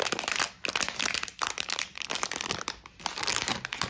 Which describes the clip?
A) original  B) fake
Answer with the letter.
A